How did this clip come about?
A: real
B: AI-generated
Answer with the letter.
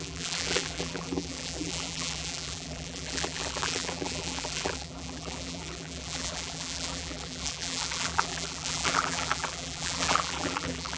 B